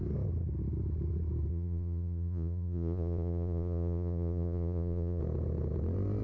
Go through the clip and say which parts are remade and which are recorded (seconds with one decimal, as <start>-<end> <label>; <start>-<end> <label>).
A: 0.0-1.5 recorded; 1.5-5.2 remade; 5.2-6.2 recorded